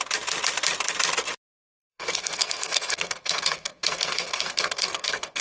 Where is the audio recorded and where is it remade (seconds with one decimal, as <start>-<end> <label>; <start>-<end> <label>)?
0.0-1.9 recorded; 1.9-5.4 remade